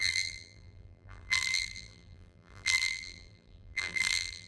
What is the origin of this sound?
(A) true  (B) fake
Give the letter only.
B